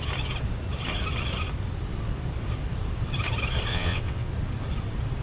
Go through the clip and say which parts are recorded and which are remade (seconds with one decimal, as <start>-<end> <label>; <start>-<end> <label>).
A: 0.0-3.7 recorded; 3.7-4.3 remade; 4.3-5.2 recorded